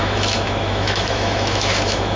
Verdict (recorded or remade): remade